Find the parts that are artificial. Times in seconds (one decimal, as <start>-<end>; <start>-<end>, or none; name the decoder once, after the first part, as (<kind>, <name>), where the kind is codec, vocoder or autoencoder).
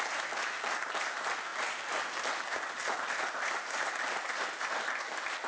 none